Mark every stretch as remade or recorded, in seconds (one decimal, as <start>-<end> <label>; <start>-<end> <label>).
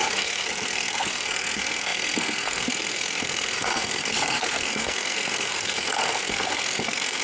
0.0-7.2 remade